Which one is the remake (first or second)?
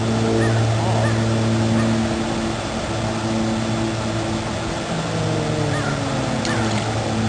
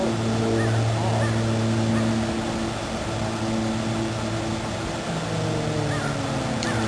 second